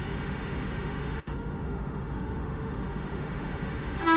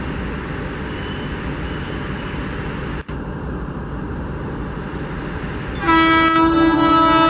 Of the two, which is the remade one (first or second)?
first